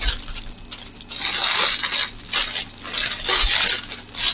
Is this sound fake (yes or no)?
no